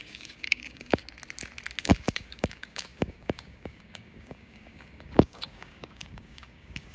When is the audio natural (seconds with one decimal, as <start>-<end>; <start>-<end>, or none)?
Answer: 1.0-1.8